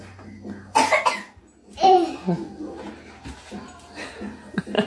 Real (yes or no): yes